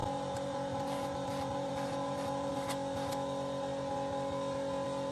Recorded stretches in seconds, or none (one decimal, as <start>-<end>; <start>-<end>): 2.5-5.1